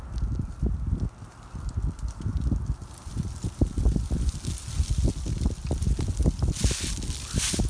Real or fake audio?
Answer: real